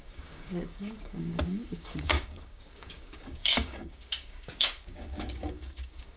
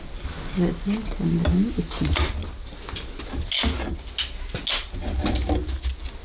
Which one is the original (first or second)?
second